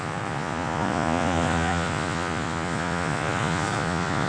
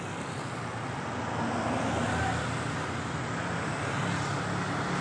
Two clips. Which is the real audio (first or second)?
second